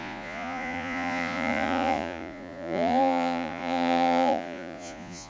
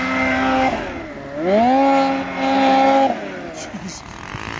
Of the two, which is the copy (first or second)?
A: first